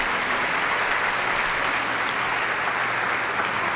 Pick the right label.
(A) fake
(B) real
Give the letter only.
B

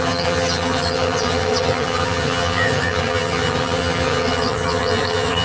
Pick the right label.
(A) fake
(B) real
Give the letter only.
A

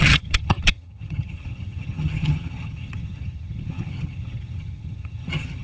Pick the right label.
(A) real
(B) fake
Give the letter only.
B